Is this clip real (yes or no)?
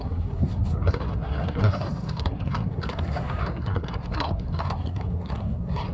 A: no